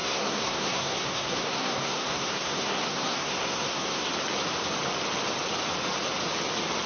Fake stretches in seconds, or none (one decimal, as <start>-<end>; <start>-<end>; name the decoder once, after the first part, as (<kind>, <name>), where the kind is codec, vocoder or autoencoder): 0.0-4.1 (codec, SNAC)